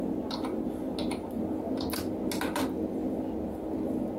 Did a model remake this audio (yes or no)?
no